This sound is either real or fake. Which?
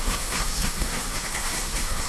fake